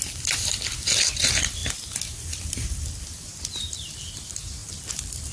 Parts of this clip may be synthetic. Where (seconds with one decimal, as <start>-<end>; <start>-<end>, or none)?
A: none